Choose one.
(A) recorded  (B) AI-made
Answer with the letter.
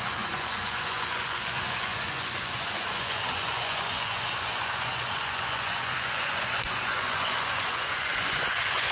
B